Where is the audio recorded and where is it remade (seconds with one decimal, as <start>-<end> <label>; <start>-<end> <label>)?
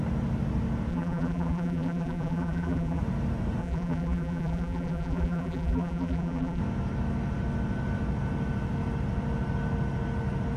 0.0-0.9 recorded; 0.9-3.0 remade; 3.0-3.6 recorded; 3.6-6.6 remade; 6.6-10.6 recorded